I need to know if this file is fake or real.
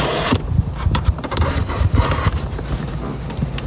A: fake